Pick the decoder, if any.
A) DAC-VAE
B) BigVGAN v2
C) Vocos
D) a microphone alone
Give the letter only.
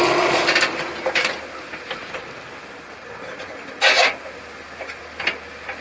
D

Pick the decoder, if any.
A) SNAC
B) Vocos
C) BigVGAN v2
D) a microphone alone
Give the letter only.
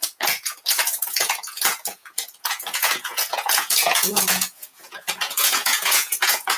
B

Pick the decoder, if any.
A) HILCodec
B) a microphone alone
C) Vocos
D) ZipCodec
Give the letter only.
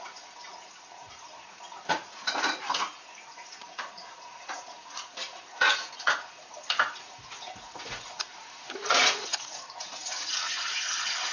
C